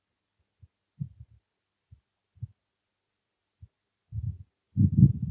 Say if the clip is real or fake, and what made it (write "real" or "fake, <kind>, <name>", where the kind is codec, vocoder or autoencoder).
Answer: real